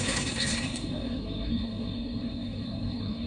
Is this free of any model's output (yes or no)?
no